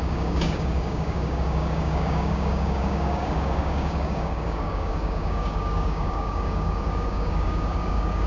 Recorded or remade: remade